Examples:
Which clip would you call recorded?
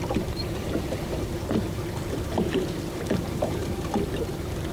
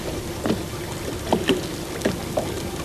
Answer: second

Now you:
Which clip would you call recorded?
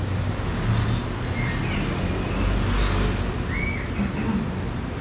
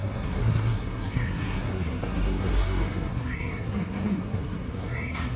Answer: first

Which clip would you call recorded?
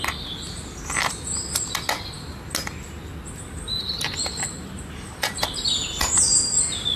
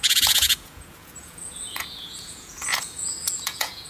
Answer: first